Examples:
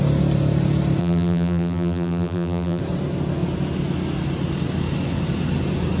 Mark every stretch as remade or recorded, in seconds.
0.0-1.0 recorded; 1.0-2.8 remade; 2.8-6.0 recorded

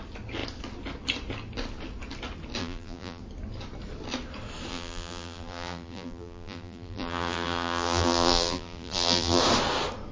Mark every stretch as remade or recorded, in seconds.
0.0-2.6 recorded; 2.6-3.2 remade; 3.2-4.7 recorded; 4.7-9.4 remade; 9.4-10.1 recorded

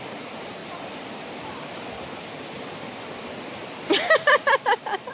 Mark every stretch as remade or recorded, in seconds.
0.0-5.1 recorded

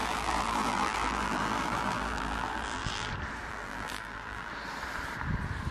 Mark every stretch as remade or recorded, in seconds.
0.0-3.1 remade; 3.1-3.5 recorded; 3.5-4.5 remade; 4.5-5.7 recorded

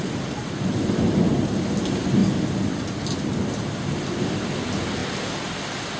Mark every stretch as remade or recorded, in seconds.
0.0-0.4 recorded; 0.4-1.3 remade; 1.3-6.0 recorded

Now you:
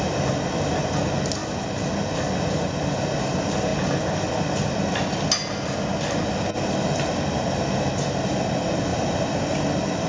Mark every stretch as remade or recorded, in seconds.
0.0-8.9 recorded; 8.9-9.5 remade; 9.5-10.1 recorded